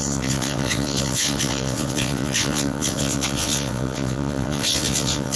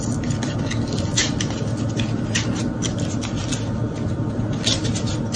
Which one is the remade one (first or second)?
first